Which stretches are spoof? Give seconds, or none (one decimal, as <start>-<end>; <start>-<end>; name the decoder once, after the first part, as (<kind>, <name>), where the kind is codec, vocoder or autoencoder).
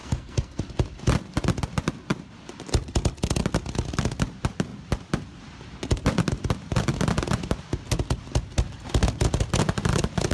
0.0-0.6 (codec, SNAC)